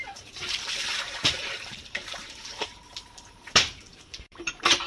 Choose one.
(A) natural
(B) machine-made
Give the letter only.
B